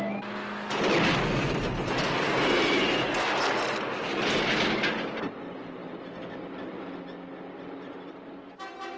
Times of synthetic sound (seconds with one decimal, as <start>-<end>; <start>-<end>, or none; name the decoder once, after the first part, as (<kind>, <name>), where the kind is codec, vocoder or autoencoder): none